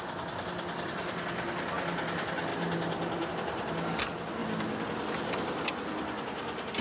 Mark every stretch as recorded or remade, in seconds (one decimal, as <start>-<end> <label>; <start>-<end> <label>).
0.0-6.8 recorded

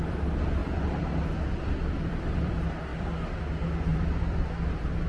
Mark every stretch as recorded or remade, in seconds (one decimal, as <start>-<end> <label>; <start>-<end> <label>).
0.0-0.6 recorded; 0.6-2.5 remade; 2.5-2.9 recorded; 2.9-3.4 remade; 3.4-3.9 recorded; 3.9-4.4 remade; 4.4-5.1 recorded